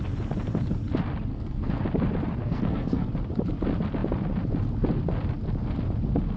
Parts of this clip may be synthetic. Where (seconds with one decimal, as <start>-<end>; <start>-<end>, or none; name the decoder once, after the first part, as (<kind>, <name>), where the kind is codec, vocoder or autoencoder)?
1.3-1.8 (codec, SNAC); 2.4-3.1